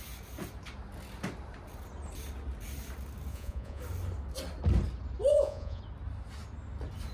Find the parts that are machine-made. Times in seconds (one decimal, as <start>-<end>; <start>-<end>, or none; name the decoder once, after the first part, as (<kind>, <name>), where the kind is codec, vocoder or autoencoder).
3.3-3.8 (vocoder, Vocos); 5.3-5.8